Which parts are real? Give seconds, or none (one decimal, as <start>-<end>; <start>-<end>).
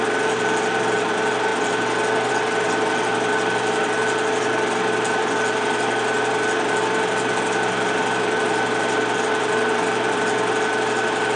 0.0-11.4